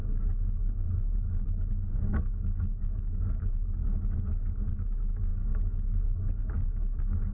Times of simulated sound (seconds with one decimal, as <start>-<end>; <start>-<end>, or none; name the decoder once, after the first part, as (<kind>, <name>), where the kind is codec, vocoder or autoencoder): 0.0-3.8 (codec, DAC); 4.7-7.3